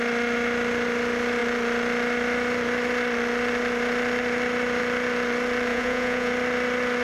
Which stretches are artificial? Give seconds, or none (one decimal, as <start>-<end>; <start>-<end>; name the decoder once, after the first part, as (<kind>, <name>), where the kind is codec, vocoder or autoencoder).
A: 5.7-6.3 (vocoder, Vocos)